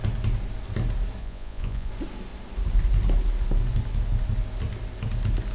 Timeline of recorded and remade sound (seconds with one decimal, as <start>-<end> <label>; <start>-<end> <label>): 0.0-1.2 recorded; 1.2-1.9 remade; 1.9-5.5 recorded